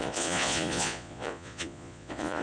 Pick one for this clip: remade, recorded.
remade